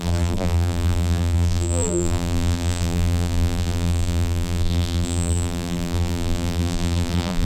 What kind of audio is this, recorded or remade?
remade